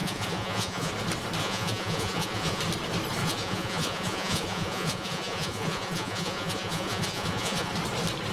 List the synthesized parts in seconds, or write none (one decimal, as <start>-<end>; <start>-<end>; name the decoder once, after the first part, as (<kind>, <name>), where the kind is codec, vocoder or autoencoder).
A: 0.0-0.9 (vocoder, Vocos); 1.4-2.6; 3.2-7.7